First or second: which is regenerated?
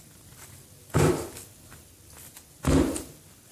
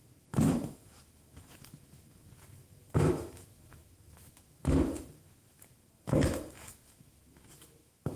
second